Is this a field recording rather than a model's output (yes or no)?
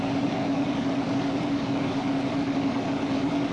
no